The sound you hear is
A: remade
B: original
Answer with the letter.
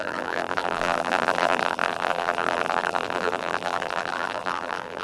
A